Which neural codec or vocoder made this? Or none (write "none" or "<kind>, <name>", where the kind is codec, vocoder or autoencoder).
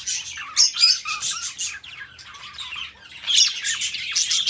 none